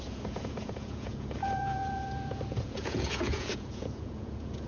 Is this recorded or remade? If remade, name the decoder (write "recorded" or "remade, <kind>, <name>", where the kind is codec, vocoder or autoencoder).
remade, vocoder, Vocos